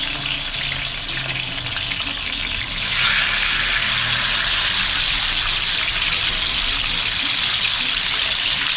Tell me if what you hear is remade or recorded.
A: recorded